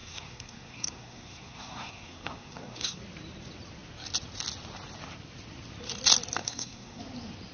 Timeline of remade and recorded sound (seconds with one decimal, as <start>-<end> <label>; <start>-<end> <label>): 0.0-3.0 remade; 3.0-6.4 recorded; 6.4-7.0 remade; 7.0-7.5 recorded